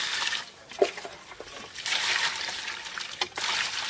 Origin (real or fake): real